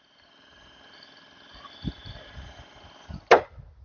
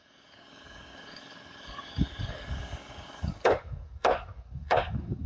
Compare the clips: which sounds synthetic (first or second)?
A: second